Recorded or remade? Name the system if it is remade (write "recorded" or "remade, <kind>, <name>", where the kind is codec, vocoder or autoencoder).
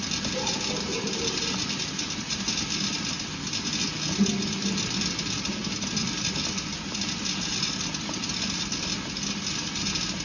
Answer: recorded